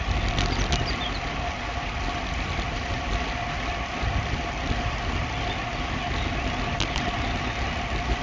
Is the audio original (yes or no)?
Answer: yes